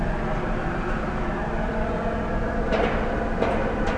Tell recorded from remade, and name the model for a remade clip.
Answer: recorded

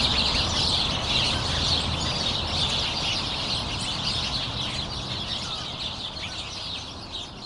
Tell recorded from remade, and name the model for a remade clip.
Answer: recorded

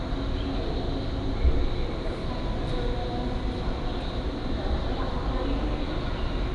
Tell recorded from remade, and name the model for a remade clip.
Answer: recorded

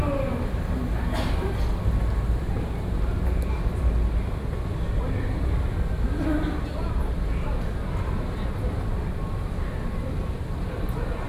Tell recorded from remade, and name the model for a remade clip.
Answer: recorded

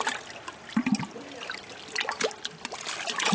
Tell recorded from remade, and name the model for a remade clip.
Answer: recorded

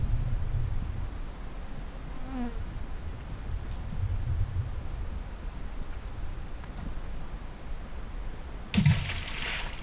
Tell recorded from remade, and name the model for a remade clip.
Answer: recorded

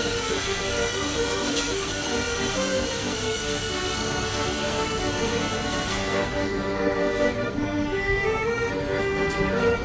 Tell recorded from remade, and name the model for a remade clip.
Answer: remade, codec, SNAC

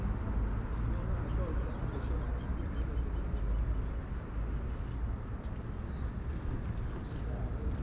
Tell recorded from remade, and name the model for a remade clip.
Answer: recorded